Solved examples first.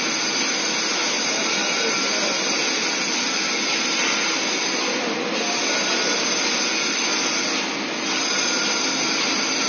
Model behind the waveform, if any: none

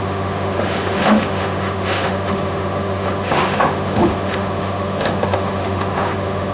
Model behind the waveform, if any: autoencoder, DAC-VAE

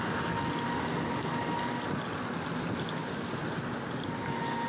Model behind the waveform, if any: none